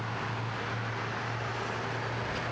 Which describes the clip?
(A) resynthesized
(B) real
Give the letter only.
B